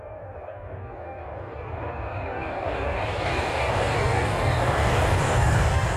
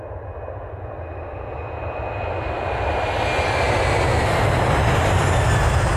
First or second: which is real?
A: second